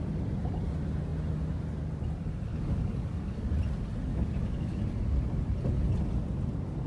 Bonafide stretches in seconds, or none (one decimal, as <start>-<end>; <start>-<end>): 0.0-2.5; 3.5-4.1; 4.9-6.9